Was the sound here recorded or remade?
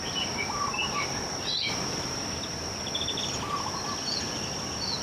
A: recorded